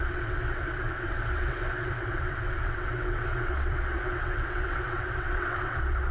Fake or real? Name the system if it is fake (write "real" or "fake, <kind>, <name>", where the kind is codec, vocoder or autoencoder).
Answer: fake, vocoder, WaveNeXt